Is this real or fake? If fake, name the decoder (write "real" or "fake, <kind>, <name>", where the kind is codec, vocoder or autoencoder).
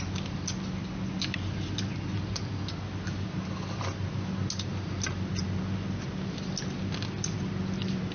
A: real